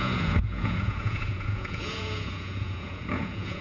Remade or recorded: remade